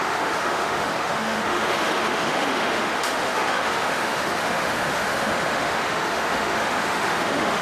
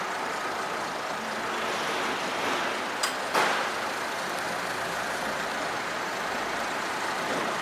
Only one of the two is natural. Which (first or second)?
second